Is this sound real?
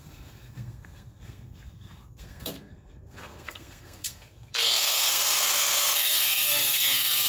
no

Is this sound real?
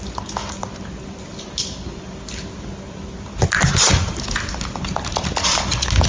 yes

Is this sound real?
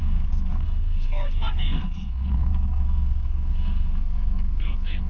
no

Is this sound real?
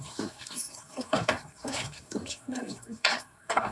no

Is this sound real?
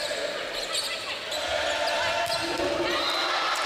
yes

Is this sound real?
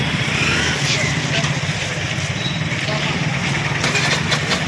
yes